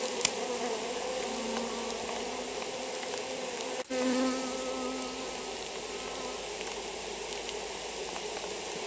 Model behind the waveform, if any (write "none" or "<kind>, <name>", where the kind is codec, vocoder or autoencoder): none